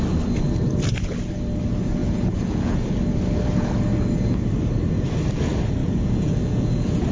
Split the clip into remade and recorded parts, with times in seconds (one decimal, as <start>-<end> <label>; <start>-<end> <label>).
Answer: 0.0-2.0 recorded; 2.0-2.8 remade; 2.8-5.8 recorded; 5.8-7.1 remade